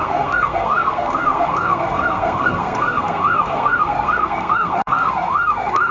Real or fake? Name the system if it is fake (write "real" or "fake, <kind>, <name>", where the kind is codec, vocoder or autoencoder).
fake, codec, SNAC